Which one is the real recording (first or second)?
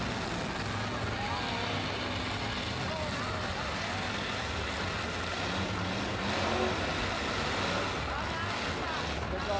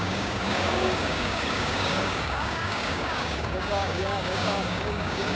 first